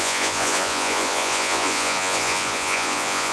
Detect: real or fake fake